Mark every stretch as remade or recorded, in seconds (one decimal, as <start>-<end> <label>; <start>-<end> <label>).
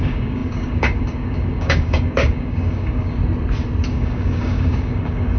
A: 0.0-3.2 remade; 3.2-3.9 recorded; 3.9-5.4 remade